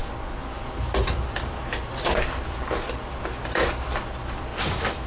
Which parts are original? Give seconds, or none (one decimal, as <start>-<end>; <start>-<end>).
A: 0.0-5.1